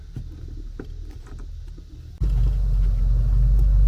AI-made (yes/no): no